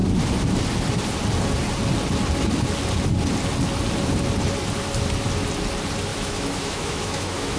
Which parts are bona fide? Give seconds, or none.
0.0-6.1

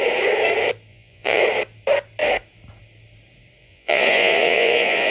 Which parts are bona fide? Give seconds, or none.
0.0-0.9; 1.4-3.6

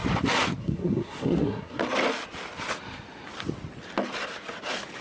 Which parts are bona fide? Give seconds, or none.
0.0-0.6; 1.8-5.0

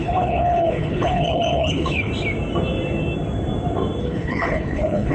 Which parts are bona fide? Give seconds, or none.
2.1-4.0

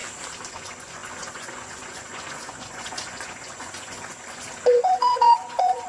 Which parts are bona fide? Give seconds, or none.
0.0-0.5

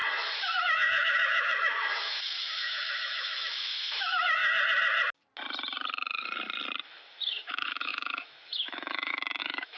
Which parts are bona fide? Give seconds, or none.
0.0-0.6; 4.4-7.1

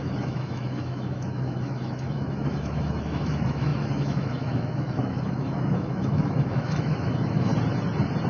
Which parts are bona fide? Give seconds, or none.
7.5-8.3

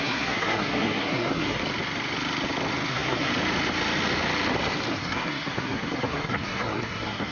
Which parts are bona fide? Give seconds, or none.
1.6-2.9; 3.3-4.9